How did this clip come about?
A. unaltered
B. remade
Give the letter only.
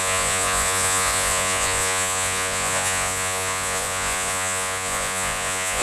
B